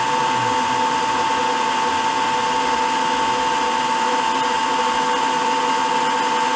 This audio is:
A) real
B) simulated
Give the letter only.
A